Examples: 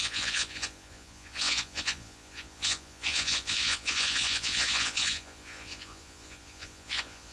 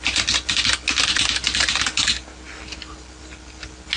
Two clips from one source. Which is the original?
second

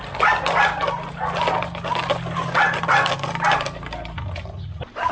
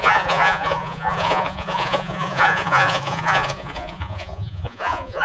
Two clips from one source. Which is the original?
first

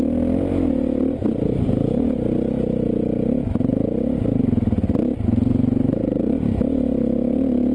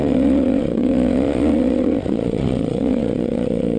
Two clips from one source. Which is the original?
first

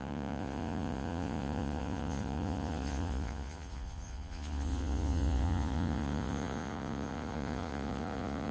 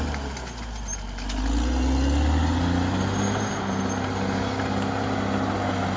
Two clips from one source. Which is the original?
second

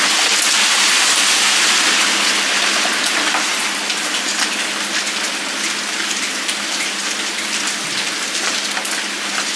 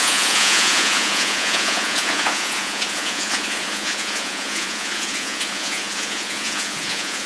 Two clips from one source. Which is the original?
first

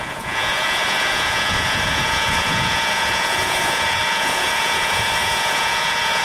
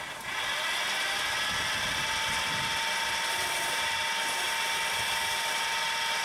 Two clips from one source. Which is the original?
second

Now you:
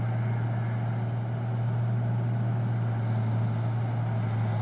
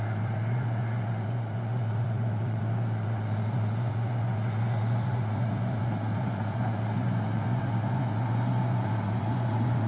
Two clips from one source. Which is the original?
first